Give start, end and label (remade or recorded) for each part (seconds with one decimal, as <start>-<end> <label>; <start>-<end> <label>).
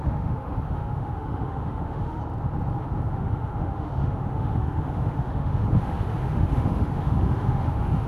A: 0.0-2.2 remade; 2.2-3.1 recorded; 3.1-8.1 remade